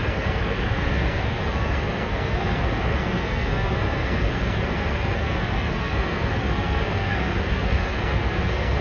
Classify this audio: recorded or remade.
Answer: remade